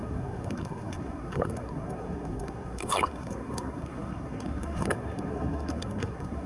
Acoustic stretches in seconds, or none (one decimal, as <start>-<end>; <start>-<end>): none

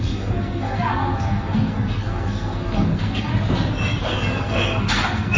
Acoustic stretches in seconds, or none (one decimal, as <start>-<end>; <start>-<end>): 3.3-4.0